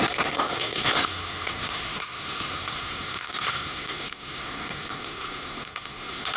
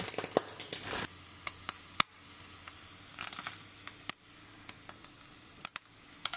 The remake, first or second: first